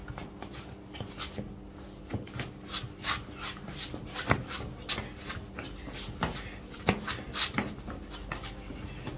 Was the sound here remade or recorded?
recorded